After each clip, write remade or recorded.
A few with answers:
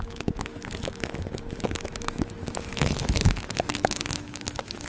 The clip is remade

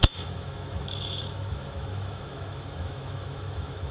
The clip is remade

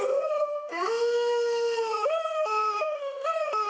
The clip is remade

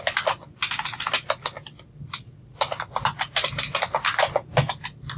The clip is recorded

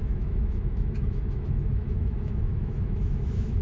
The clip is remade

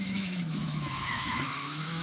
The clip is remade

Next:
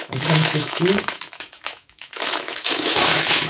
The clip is remade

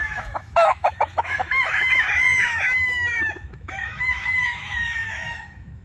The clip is remade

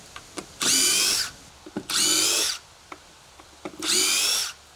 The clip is recorded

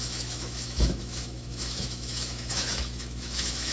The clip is remade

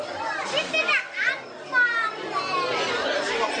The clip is recorded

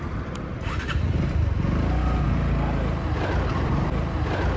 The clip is recorded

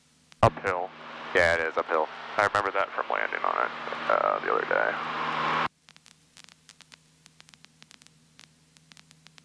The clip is recorded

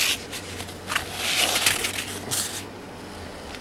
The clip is recorded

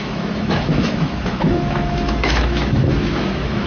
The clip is remade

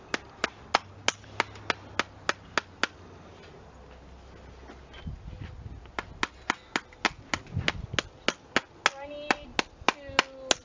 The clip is recorded